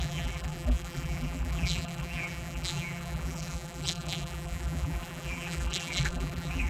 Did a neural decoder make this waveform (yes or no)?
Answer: yes